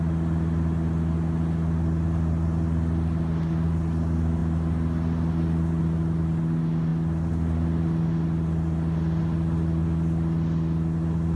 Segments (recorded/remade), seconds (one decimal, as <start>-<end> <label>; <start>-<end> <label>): 0.0-11.4 recorded